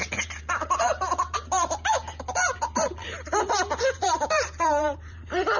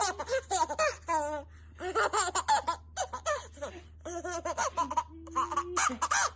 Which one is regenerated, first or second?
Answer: first